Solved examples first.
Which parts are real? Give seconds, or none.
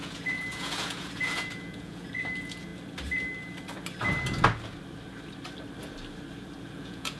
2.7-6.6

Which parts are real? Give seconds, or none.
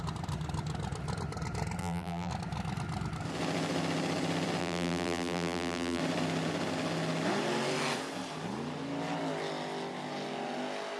0.0-1.8; 2.3-4.6; 6.0-11.0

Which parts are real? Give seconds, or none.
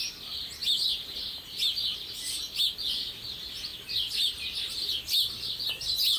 0.0-6.2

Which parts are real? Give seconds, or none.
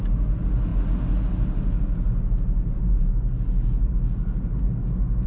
0.0-5.3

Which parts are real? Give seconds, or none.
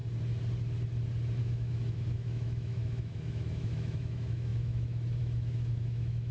0.0-1.4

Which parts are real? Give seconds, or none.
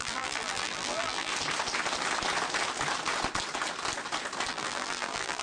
1.3-4.5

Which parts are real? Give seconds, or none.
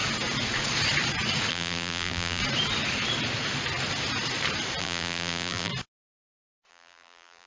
0.0-1.5; 2.4-4.8; 5.7-6.7